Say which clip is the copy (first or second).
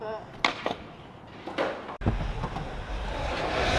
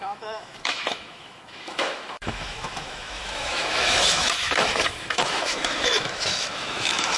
second